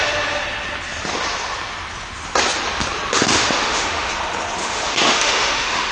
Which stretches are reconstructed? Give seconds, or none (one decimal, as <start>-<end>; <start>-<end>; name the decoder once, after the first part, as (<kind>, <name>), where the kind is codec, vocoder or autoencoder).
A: 3.1-4.1 (autoencoder, DAC-VAE); 4.6-5.9